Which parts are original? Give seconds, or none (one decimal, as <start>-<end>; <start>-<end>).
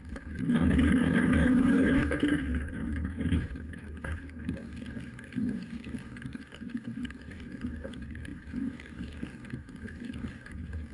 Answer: none